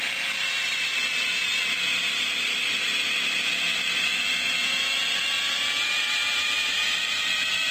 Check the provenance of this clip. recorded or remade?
recorded